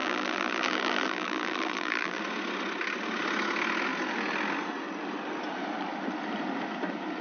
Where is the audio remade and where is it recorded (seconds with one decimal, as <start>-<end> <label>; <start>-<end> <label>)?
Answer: 0.0-2.2 remade; 2.2-7.2 recorded